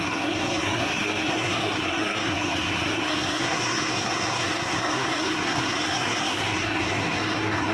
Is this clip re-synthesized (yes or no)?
yes